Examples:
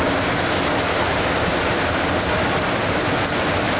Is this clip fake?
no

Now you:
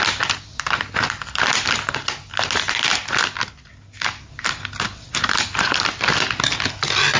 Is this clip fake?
no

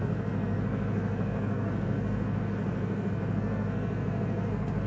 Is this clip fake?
yes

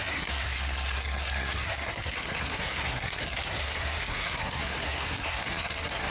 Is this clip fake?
yes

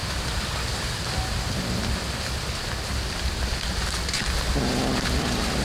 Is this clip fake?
no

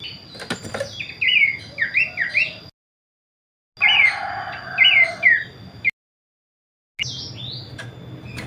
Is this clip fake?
no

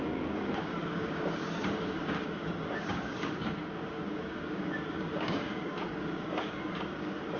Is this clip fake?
yes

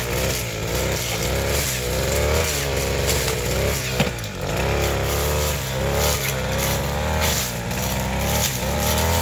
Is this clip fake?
no